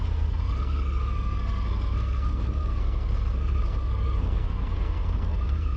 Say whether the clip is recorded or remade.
remade